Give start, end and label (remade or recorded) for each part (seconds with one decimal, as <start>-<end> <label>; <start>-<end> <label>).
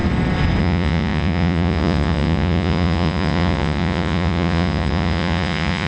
0.0-0.6 recorded; 0.6-5.9 remade